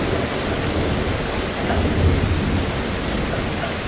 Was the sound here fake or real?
real